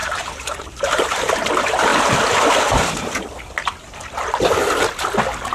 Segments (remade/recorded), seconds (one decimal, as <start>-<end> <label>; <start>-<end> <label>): 0.0-1.5 remade; 1.5-5.5 recorded